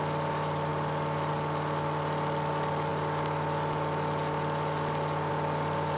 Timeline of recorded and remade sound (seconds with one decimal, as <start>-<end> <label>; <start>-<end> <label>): 0.0-6.0 recorded